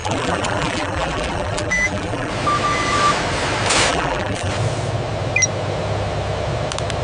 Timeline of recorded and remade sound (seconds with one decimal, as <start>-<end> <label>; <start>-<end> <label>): 0.0-2.3 remade; 2.3-3.9 recorded; 3.9-4.5 remade; 4.5-7.0 recorded